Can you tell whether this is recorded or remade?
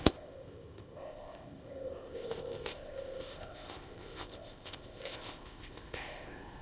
remade